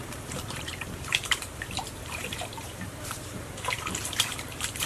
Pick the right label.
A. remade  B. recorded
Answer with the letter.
A